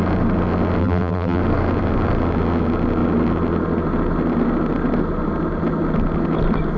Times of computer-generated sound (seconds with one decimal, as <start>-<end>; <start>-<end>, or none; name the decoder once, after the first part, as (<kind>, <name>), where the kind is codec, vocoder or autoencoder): 0.8-1.4 (vocoder, BigVGAN v2)